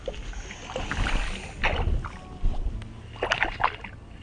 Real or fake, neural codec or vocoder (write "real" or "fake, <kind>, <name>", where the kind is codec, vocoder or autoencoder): real